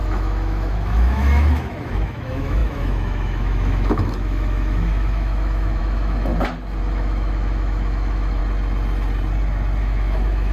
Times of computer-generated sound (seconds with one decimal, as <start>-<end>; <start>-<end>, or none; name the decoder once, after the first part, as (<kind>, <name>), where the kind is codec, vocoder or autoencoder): 0.0-6.3 (autoencoder, DAC-VAE); 6.8-8.4; 9.8-10.5